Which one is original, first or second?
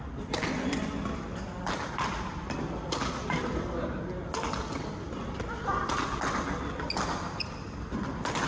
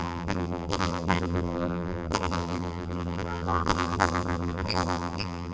first